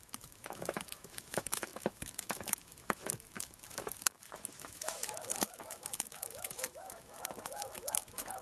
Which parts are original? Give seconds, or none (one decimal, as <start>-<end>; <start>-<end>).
none